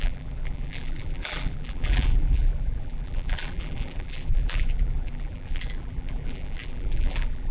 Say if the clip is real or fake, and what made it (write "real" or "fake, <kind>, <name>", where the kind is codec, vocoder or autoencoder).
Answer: fake, vocoder, BigVGAN v2